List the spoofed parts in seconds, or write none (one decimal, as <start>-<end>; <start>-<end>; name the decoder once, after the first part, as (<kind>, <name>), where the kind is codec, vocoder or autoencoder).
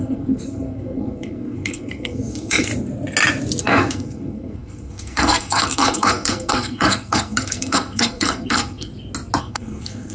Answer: 0.0-2.7 (codec, SNAC); 3.6-8.9; 9.4-10.1